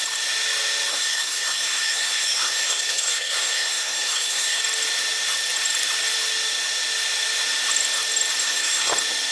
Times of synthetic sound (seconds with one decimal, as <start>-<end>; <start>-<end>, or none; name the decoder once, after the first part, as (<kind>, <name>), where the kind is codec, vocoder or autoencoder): 0.9-4.6 (codec, SNAC); 8.4-8.9